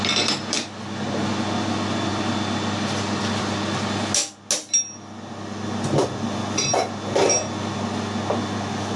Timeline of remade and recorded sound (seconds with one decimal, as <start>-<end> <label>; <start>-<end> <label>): 0.0-9.0 recorded